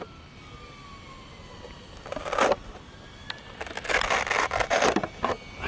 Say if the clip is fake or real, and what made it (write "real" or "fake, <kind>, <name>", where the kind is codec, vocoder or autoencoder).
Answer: real